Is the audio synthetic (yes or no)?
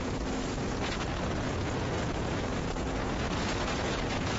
yes